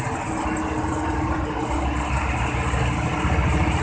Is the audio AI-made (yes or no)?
no